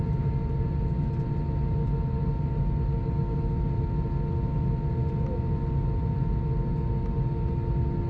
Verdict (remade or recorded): recorded